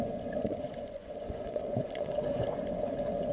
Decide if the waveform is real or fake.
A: fake